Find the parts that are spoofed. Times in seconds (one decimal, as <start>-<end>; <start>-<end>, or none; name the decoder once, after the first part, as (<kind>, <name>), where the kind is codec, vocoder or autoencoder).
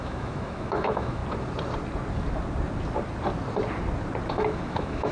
0.0-1.2 (autoencoder, DAC-VAE); 4.3-5.1